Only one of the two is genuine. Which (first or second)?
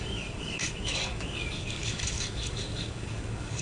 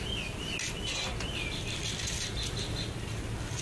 second